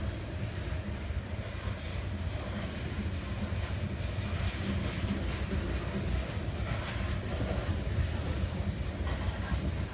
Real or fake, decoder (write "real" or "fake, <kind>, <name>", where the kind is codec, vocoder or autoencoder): real